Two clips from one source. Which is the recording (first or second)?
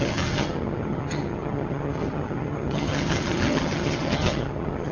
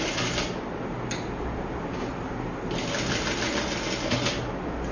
second